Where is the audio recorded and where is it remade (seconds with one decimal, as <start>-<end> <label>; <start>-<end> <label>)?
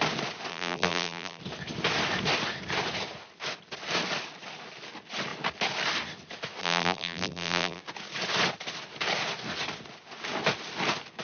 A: 0.0-0.5 recorded; 0.5-1.4 remade; 1.4-6.6 recorded; 6.6-7.8 remade; 7.8-11.2 recorded